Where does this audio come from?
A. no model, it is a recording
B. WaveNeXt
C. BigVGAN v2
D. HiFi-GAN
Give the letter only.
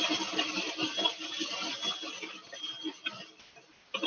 A